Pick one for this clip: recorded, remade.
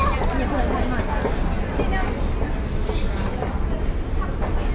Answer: recorded